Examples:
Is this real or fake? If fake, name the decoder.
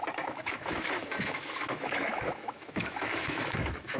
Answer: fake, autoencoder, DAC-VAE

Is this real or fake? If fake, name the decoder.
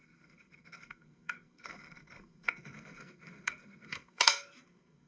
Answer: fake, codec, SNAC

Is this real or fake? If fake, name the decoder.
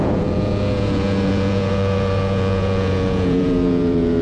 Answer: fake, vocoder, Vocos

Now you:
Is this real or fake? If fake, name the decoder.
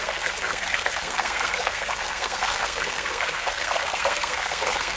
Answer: fake, codec, SNAC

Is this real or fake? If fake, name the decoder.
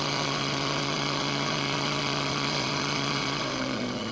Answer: fake, vocoder, Vocos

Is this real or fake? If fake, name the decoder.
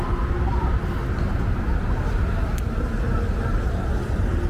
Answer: real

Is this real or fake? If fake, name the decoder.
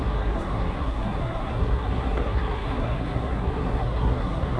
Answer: fake, codec, SNAC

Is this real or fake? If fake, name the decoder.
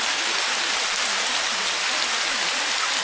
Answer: real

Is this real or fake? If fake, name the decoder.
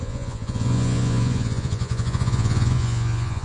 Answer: fake, vocoder, Vocos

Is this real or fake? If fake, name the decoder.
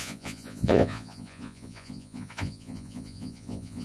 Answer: fake, vocoder, Vocos